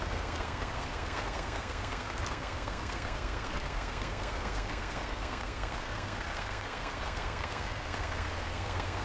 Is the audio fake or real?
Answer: fake